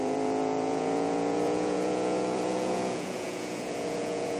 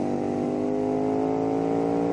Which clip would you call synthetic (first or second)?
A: first